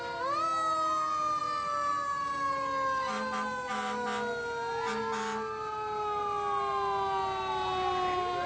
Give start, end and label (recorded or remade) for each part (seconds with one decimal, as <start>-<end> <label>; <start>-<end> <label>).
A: 0.0-8.5 recorded